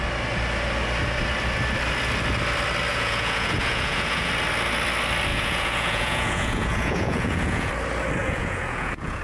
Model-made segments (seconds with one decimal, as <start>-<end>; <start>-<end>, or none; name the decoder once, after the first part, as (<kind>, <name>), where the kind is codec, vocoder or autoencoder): 2.9-4.3 (vocoder, Vocos); 5.3-7.7; 8.2-9.2